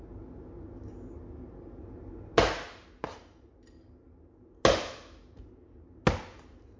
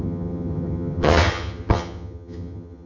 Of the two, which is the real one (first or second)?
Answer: first